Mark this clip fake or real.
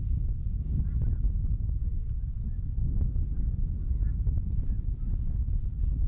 real